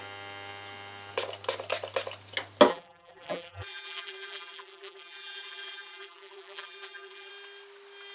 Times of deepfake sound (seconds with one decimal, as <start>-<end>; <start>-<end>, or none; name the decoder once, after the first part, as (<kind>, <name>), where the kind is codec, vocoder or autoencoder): 2.7-7.3 (vocoder, BigVGAN v2)

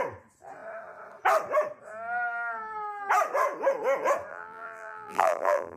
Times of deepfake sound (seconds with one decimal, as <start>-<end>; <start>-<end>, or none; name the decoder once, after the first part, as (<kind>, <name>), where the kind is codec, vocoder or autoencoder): 4.3-5.8 (vocoder, BigVGAN v2)

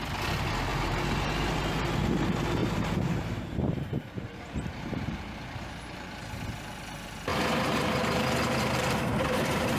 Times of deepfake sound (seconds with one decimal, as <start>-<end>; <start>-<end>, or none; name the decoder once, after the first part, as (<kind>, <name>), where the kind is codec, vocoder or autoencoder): 0.7-1.9 (vocoder, BigVGAN v2); 2.6-5.7; 7.3-9.8

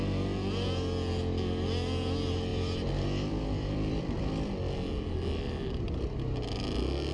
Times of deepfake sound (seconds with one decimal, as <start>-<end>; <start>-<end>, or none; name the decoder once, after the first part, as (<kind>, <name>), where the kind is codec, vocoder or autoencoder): 2.5-4.2 (vocoder, BigVGAN v2)

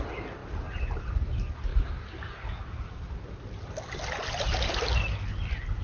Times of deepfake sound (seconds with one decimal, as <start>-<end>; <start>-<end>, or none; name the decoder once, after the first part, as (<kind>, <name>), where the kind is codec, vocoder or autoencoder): none

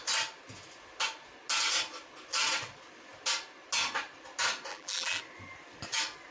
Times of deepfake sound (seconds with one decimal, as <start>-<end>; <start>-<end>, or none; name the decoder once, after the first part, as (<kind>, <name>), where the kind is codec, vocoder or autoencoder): 4.7-5.2 (vocoder, BigVGAN v2)

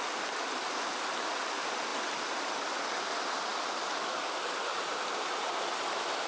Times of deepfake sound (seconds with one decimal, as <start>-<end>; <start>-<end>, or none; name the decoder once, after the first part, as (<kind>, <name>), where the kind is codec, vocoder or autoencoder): 1.9-2.5 (vocoder, BigVGAN v2); 3.5-5.3

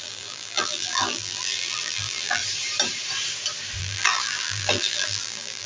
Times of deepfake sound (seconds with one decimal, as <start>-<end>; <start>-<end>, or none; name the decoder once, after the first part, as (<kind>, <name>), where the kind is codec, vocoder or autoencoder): 0.0-2.4 (vocoder, BigVGAN v2); 3.8-5.7